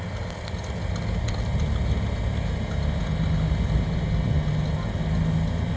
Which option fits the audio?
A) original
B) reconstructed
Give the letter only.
A